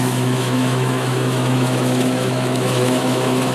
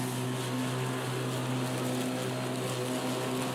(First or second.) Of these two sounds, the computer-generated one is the first